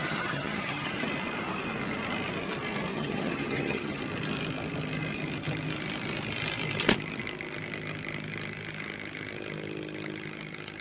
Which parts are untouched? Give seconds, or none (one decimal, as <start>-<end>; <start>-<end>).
0.9-2.9; 4.0-10.8